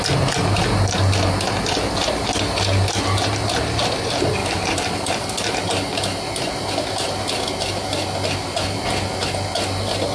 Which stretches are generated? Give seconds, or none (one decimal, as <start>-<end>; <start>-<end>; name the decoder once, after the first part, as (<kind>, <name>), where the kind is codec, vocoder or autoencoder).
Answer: none